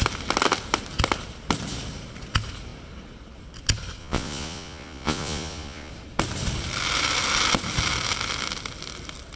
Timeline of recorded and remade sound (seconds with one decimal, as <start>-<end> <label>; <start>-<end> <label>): 0.0-4.0 recorded; 4.0-5.9 remade; 5.9-9.4 recorded